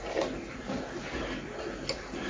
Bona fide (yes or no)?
yes